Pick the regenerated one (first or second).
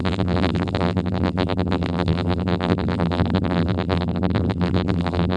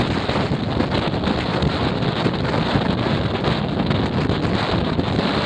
first